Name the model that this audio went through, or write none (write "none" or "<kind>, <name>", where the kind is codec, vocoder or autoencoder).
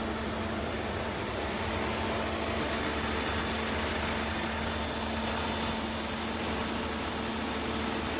none